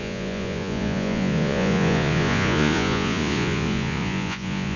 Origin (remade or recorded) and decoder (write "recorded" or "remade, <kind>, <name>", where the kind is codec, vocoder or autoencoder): remade, vocoder, Vocos